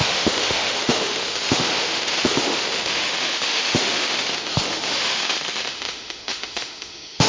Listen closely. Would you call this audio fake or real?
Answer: fake